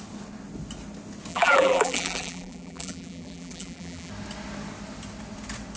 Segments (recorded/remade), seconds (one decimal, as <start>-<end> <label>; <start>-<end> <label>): 0.0-1.3 recorded; 1.3-4.1 remade; 4.1-5.8 recorded